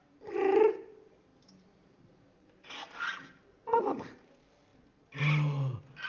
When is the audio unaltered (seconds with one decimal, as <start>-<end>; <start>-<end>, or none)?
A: 4.7-6.1